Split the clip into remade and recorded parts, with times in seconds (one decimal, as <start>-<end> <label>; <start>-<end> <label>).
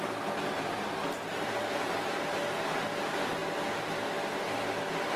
0.0-1.0 recorded; 1.0-2.8 remade; 2.8-5.2 recorded